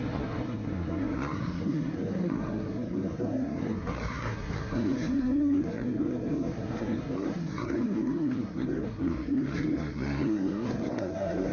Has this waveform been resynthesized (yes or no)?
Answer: yes